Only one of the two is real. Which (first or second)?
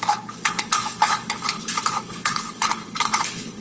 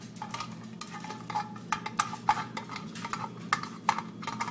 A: second